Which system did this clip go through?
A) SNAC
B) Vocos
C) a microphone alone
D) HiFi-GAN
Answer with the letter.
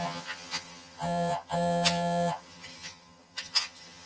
D